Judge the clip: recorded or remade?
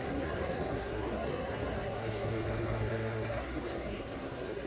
remade